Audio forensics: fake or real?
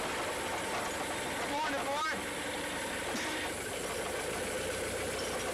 real